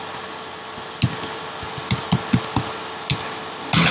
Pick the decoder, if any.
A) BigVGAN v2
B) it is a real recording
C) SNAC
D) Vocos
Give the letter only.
B